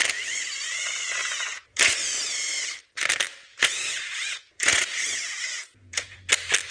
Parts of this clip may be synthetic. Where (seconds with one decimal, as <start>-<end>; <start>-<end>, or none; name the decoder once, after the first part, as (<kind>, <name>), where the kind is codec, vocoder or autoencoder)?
1.2-1.8 (vocoder, Vocos); 3.5-6.3